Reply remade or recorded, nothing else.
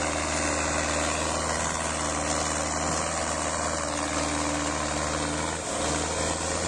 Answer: recorded